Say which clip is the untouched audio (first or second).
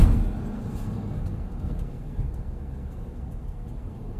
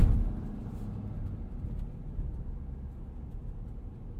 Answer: second